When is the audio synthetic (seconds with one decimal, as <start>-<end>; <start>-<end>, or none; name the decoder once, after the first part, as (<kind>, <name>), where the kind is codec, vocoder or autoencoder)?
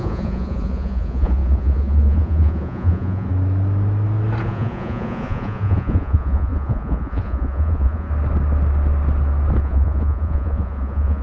0.0-3.3 (vocoder, Vocos); 4.4-8.1; 9.6-11.2